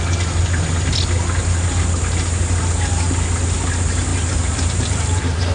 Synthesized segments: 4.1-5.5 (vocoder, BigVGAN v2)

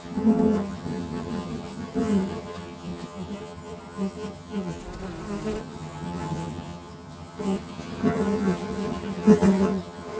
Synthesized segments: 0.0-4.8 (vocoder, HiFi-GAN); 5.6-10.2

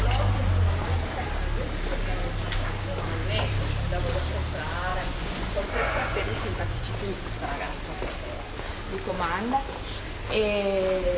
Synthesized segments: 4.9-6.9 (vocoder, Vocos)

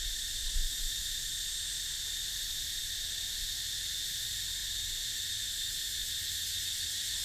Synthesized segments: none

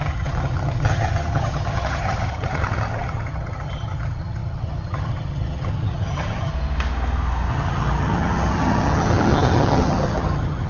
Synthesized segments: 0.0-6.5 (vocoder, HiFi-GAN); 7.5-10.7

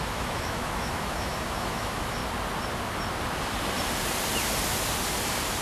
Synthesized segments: 0.0-2.2 (autoencoder, DAC-VAE)